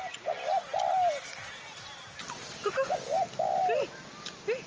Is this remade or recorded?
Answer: recorded